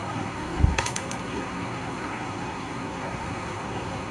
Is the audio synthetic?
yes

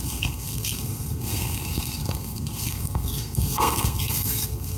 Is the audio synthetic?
yes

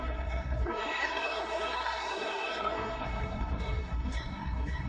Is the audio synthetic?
yes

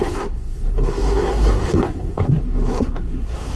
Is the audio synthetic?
yes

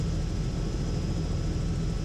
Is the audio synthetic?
no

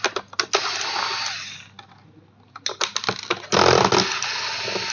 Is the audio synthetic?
no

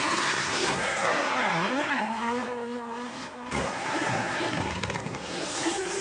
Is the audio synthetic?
yes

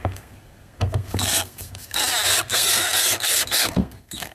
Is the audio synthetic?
yes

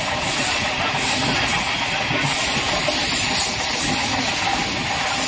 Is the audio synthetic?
no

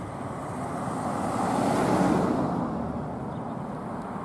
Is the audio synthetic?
no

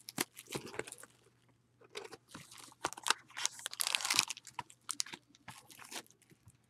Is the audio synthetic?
no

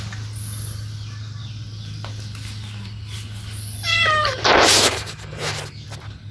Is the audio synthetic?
no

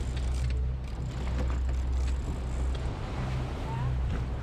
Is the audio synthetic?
no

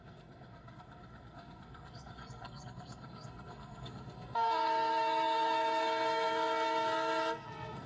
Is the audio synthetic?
yes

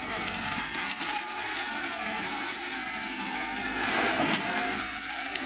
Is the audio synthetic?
yes